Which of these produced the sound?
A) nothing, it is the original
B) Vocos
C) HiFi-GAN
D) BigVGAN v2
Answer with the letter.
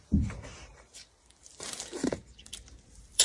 D